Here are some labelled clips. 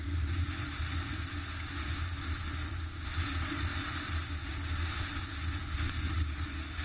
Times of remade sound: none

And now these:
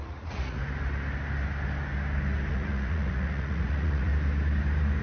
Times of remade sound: 0.0-0.6 (vocoder, Vocos); 2.5-4.1

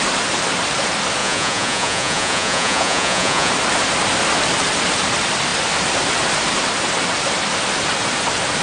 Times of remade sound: 1.2-3.5 (vocoder, Vocos)